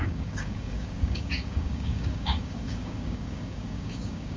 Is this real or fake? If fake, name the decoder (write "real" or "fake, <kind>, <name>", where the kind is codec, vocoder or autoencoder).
fake, codec, DAC